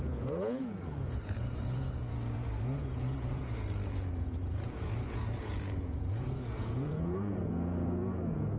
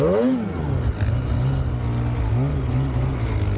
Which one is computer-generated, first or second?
first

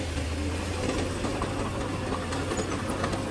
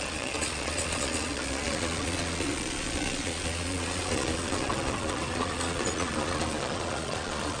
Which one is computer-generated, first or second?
second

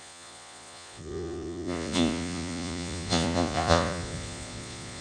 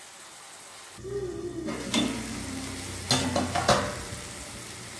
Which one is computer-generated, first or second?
first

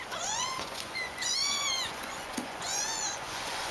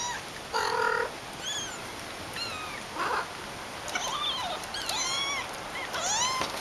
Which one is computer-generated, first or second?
first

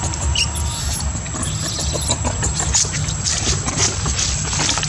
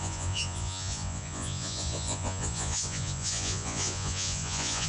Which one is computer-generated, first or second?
second